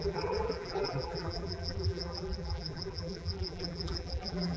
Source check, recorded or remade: remade